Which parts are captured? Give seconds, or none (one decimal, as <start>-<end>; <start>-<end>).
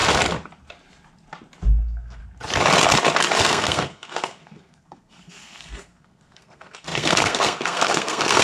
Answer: 0.0-1.8; 2.2-3.4